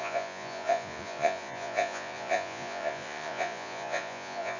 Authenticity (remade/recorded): remade